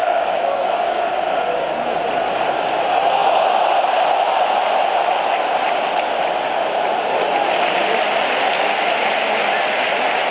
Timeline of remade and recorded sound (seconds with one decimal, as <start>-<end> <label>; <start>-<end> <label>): 0.0-1.0 remade; 1.0-10.3 recorded